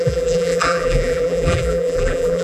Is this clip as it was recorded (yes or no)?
no